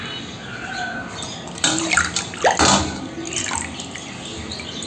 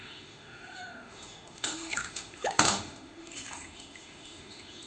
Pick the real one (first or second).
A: first